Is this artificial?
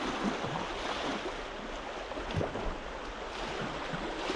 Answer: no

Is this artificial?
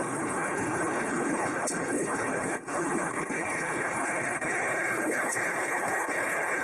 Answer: yes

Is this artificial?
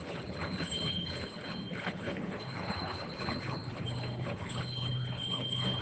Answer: yes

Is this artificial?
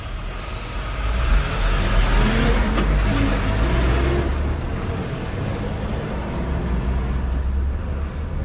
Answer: no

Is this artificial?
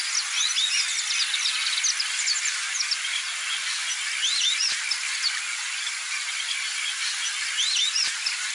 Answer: no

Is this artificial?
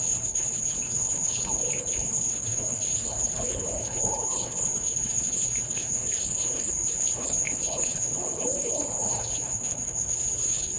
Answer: yes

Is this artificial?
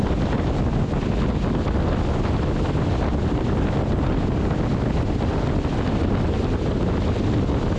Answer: no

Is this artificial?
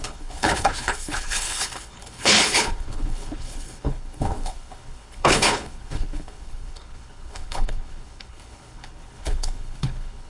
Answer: yes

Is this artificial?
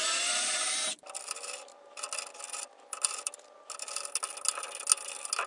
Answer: no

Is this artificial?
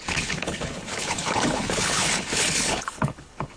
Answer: yes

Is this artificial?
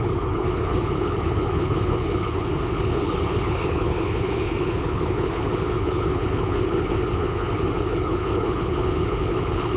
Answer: yes